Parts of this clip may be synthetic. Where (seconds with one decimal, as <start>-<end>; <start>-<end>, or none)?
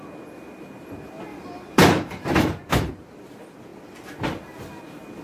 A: 1.3-2.9